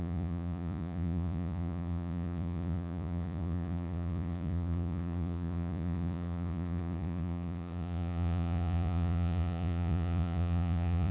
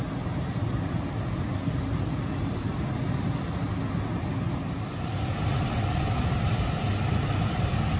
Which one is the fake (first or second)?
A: first